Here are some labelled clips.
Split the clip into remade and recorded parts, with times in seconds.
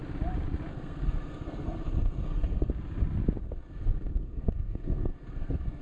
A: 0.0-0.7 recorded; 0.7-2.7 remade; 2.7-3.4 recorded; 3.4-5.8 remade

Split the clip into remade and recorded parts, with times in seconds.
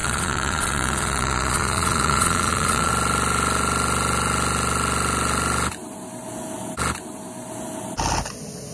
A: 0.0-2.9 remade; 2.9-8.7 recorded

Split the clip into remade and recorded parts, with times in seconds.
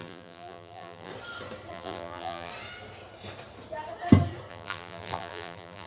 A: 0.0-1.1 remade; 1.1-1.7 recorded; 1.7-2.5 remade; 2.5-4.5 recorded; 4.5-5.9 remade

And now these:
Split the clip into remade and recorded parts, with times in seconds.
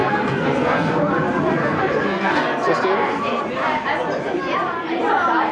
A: 0.0-1.0 remade; 1.0-1.6 recorded; 1.6-3.4 remade; 3.4-5.5 recorded